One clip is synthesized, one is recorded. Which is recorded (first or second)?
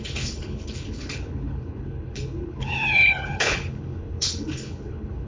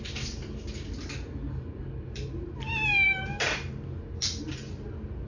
second